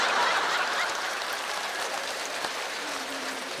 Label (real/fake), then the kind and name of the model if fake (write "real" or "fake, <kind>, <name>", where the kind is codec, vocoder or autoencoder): fake, vocoder, BigVGAN v2